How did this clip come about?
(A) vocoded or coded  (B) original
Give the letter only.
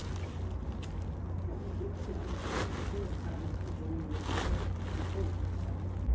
B